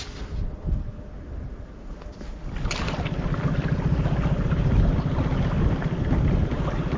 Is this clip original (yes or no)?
yes